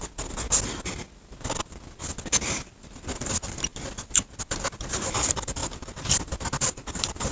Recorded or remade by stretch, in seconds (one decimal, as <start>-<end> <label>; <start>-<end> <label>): 0.0-7.3 recorded